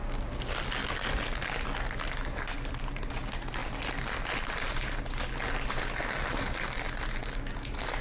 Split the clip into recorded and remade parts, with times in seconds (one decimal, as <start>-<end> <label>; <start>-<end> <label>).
0.0-8.0 recorded